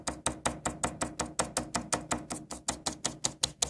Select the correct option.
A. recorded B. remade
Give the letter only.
A